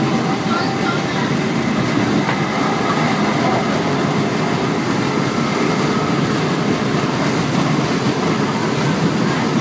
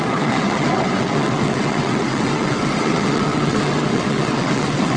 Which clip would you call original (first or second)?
first